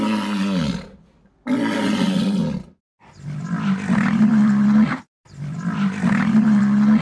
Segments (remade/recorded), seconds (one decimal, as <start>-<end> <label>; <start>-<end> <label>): 0.0-2.4 recorded; 2.4-6.6 remade; 6.6-7.0 recorded